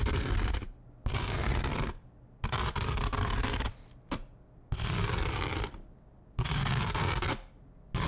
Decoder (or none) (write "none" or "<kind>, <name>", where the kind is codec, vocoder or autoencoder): none